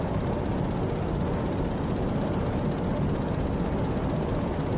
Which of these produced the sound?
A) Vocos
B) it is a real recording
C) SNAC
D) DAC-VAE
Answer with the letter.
B